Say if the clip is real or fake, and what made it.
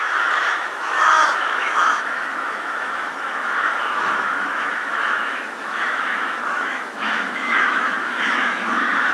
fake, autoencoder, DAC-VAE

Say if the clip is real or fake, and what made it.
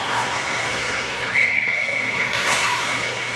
fake, codec, SNAC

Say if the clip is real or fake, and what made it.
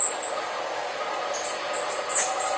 real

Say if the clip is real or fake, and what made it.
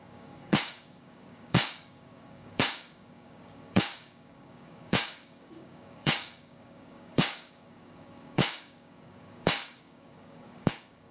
fake, codec, DAC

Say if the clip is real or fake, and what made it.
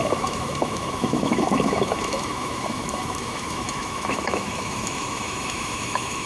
fake, autoencoder, DAC-VAE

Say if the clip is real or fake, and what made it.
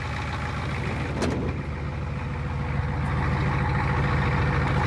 real